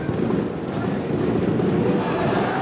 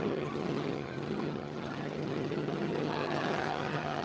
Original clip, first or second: first